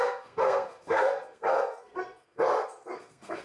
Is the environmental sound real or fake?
fake